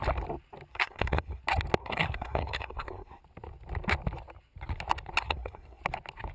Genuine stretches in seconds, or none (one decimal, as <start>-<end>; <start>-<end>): 0.0-0.7; 1.4-1.8; 3.2-5.2; 5.8-6.3